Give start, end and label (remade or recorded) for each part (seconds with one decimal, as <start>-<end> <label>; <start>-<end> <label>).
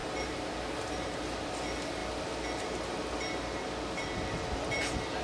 0.0-1.2 remade; 1.2-5.2 recorded